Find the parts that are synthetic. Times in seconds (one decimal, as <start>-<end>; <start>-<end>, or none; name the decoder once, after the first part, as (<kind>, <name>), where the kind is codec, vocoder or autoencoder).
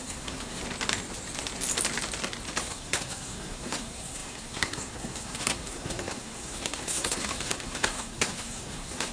0.0-0.6 (codec, SNAC); 2.6-9.1